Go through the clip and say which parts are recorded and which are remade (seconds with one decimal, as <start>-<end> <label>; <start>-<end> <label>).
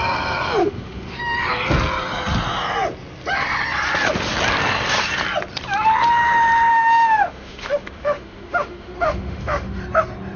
0.0-0.6 recorded; 0.6-1.2 remade; 1.2-6.7 recorded; 6.7-9.8 remade; 9.8-10.4 recorded